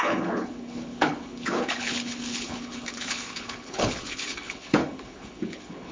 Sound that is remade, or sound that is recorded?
remade